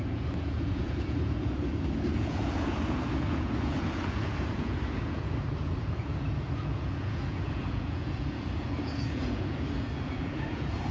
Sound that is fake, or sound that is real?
fake